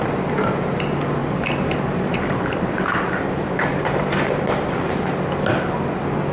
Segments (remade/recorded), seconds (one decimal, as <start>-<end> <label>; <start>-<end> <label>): 0.0-1.2 recorded; 1.2-5.0 remade; 5.0-6.3 recorded